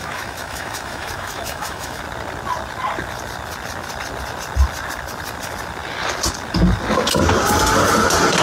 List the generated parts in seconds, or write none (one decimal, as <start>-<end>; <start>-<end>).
0.0-2.0